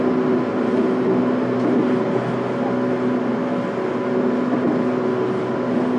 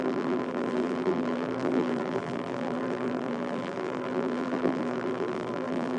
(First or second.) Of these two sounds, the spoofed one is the second